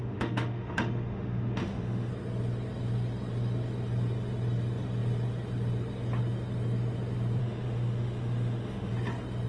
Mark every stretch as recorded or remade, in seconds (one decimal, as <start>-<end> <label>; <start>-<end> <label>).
0.0-2.1 remade; 2.1-7.4 recorded; 7.4-8.9 remade; 8.9-9.5 recorded